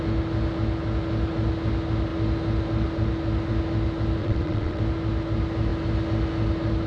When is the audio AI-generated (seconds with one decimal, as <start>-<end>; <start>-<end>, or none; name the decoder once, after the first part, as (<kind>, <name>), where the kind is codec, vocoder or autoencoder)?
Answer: 4.2-4.8 (vocoder, WaveNeXt)